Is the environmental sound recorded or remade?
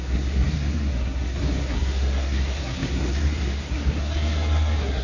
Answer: remade